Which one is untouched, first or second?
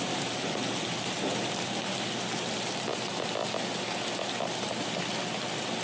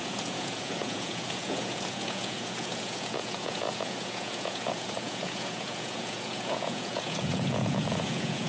first